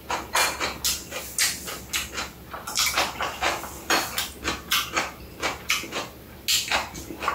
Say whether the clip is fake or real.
real